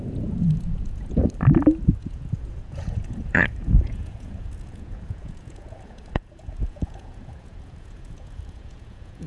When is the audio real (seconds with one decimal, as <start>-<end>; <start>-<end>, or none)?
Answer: 1.2-2.0